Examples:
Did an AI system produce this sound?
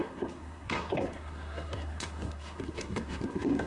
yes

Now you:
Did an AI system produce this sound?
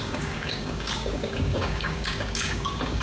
yes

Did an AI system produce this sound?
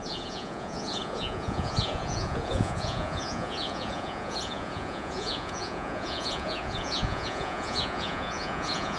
yes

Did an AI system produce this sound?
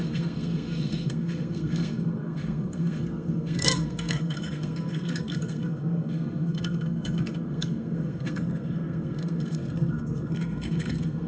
yes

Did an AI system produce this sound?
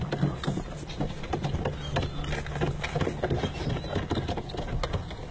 no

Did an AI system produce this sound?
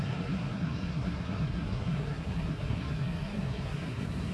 yes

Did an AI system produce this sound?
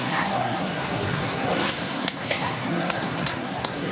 yes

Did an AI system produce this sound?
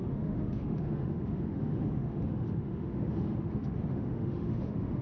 yes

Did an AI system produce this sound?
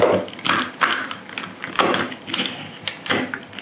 no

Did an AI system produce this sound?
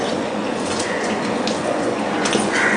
yes